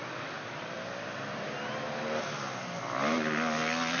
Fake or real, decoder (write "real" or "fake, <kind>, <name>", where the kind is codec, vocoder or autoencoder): real